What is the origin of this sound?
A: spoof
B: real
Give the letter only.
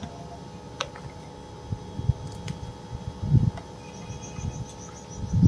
B